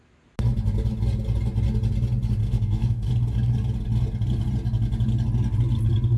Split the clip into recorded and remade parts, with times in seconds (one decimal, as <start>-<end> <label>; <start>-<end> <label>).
0.0-2.4 recorded; 2.4-3.1 remade; 3.1-6.2 recorded